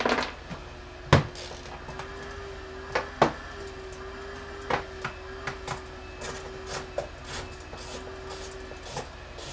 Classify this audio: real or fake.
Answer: real